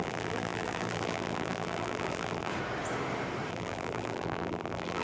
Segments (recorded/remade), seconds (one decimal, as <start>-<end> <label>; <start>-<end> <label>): 0.0-2.5 remade; 2.5-3.5 recorded; 3.5-5.0 remade